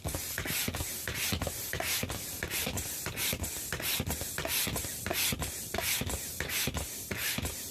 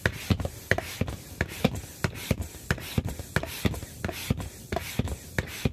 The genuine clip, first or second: first